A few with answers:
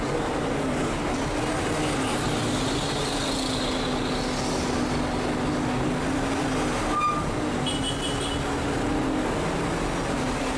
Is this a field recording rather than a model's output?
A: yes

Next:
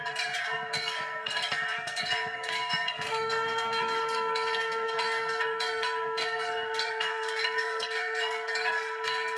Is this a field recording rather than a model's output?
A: no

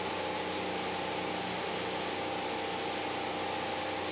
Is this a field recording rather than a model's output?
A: yes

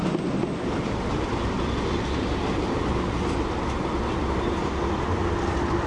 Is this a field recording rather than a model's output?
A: yes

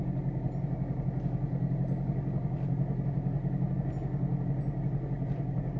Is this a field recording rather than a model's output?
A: yes